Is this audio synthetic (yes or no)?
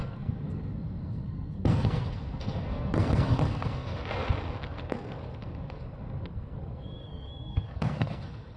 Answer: yes